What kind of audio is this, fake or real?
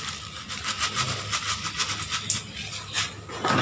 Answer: real